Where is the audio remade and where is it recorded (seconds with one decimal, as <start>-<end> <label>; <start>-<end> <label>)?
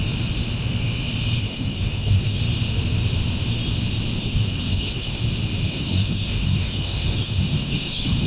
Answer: 0.0-1.4 recorded; 1.4-2.4 remade; 2.4-4.2 recorded; 4.2-5.2 remade; 5.2-5.7 recorded; 5.7-8.3 remade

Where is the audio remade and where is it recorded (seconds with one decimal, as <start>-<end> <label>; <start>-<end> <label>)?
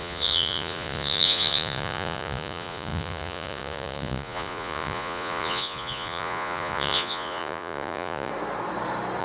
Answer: 0.0-8.3 remade; 8.3-9.2 recorded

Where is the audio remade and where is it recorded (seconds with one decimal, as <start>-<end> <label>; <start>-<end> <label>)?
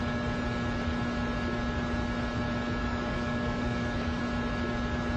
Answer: 0.0-2.8 recorded; 2.8-4.2 remade; 4.2-5.2 recorded